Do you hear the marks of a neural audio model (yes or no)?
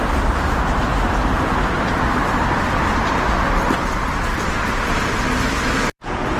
yes